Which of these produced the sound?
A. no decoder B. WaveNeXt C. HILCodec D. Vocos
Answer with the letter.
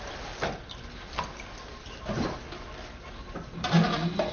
A